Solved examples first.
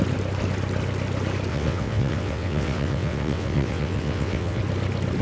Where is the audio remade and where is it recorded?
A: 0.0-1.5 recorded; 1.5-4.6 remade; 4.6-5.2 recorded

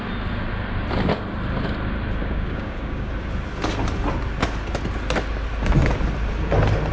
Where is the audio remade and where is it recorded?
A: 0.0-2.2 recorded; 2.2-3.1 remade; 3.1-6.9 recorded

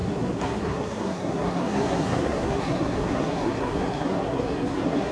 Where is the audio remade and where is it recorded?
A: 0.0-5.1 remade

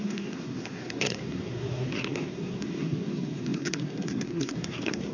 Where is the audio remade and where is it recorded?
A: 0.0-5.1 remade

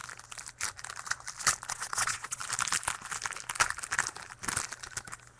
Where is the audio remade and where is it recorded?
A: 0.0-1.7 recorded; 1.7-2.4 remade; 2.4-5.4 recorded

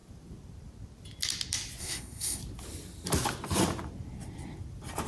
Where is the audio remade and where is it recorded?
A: 0.0-1.8 recorded; 1.8-2.4 remade; 2.4-5.1 recorded

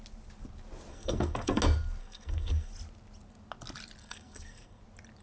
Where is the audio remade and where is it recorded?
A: 0.0-0.9 recorded; 0.9-1.6 remade; 1.6-2.0 recorded; 2.0-2.7 remade; 2.7-4.0 recorded; 4.0-4.8 remade; 4.8-5.2 recorded